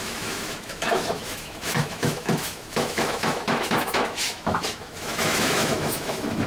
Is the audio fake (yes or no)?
yes